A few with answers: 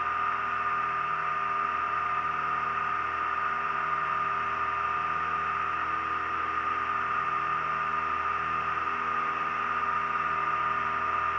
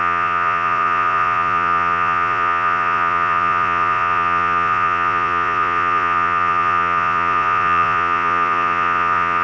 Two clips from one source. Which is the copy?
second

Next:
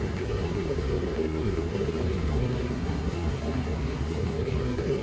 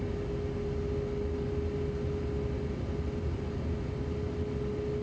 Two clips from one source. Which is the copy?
first